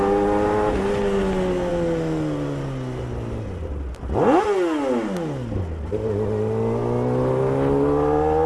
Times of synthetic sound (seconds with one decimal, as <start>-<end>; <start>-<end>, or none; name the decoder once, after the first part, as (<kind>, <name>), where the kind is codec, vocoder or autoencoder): none